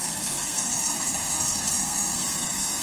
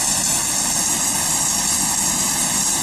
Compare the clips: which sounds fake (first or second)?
first